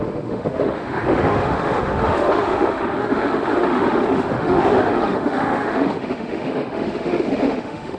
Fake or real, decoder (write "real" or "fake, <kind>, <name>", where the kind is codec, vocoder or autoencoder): fake, autoencoder, DAC-VAE